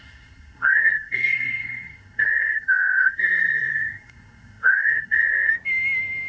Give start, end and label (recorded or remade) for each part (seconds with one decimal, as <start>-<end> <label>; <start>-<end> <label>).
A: 0.0-5.5 remade; 5.5-6.3 recorded